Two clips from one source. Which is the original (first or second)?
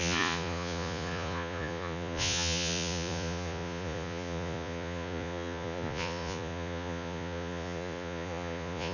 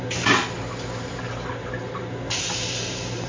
second